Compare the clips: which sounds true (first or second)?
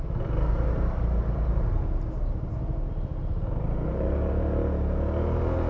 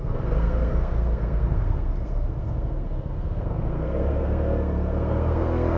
first